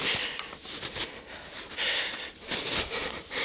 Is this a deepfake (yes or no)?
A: yes